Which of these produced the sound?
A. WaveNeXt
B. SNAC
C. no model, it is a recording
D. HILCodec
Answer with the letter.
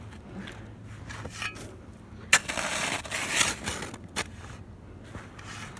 C